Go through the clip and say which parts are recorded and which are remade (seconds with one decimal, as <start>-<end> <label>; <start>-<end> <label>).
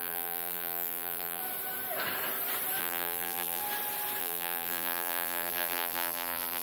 0.0-1.4 remade; 1.4-2.8 recorded; 2.8-3.6 remade; 3.6-4.2 recorded; 4.2-6.6 remade